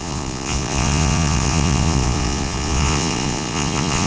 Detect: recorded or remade remade